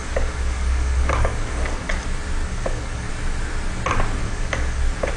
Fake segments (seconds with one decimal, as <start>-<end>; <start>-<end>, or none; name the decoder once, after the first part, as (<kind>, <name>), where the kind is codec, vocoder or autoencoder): 0.0-1.9 (codec, DAC); 2.4-3.1; 4.2-4.8